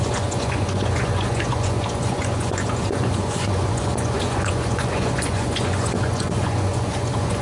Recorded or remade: remade